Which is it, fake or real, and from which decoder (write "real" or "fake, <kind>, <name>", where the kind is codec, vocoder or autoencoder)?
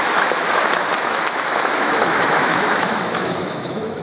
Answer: fake, autoencoder, DAC-VAE